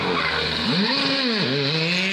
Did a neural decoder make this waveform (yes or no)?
no